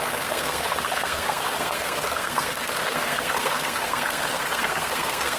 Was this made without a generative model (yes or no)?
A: no